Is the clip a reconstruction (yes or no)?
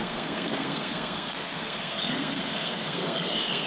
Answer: yes